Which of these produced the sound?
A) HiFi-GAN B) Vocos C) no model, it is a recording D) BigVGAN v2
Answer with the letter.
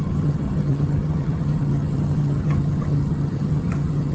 A